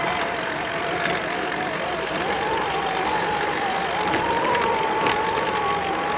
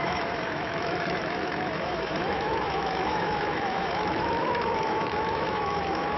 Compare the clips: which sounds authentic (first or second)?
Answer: first